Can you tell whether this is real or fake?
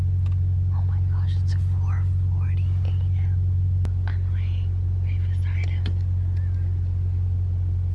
real